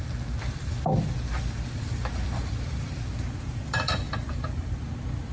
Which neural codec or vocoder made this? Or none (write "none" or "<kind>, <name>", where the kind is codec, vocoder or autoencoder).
vocoder, BigVGAN v2